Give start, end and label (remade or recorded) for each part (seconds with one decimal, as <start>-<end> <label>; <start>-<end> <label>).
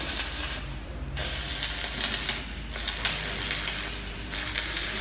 0.0-1.5 remade; 1.5-4.1 recorded; 4.1-5.0 remade